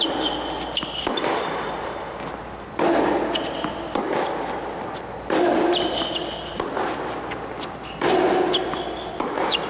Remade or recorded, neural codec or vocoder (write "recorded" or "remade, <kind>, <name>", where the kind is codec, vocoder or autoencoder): recorded